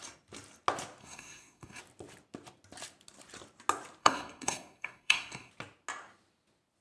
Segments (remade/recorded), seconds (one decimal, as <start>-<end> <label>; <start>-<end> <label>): 0.0-1.0 recorded; 1.0-1.8 remade; 1.8-4.0 recorded; 4.0-5.5 remade; 5.5-6.8 recorded